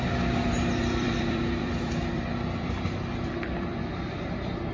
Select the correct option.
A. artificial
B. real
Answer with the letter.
A